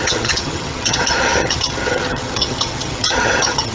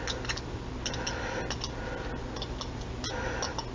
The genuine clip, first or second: second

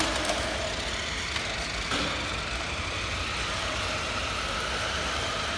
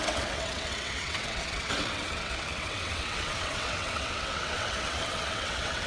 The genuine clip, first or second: first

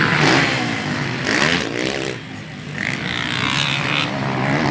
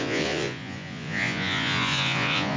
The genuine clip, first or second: first